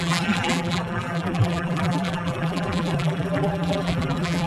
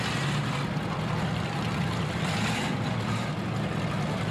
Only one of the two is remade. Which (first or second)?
first